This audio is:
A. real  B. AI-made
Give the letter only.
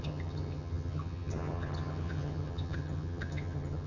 B